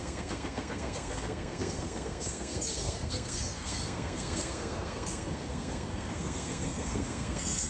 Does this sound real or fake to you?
fake